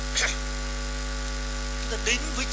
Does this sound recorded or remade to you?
recorded